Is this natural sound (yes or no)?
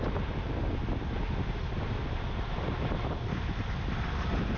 no